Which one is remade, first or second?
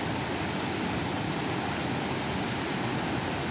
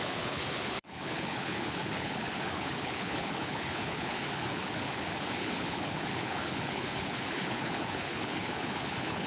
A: second